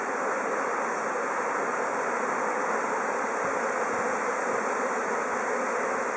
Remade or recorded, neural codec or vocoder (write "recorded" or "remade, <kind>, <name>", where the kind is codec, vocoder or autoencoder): recorded